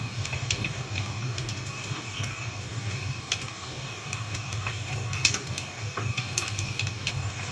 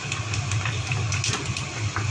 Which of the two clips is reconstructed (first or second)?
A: first